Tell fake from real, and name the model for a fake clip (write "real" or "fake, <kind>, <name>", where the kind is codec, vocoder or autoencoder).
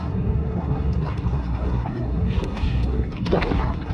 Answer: fake, codec, SNAC